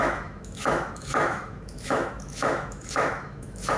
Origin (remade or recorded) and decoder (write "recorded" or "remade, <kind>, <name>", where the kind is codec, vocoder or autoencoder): remade, autoencoder, DAC-VAE